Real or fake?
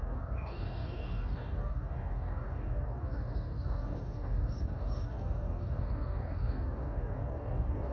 fake